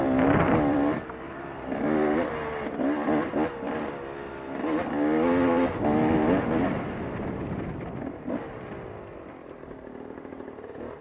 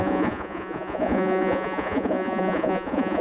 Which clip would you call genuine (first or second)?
first